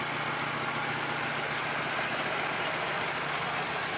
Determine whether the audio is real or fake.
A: real